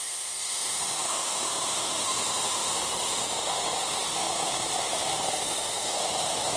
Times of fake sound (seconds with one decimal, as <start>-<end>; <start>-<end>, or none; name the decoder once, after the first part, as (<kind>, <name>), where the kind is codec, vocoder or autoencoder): 0.0-6.6 (autoencoder, DAC-VAE)